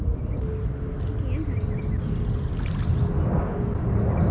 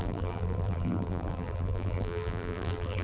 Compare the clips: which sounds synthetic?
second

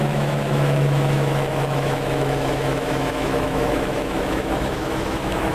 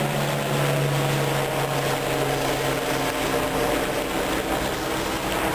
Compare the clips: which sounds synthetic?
first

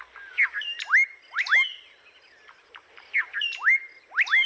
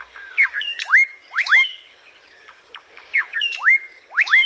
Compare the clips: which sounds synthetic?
second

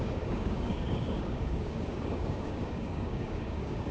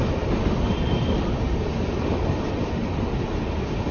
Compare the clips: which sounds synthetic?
first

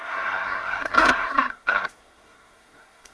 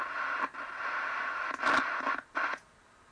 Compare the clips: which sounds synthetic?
first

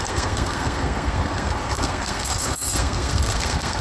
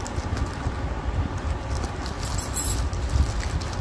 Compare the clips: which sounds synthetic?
first